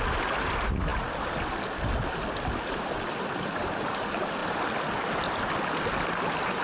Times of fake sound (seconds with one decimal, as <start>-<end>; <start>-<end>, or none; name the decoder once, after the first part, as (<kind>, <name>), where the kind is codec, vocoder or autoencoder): none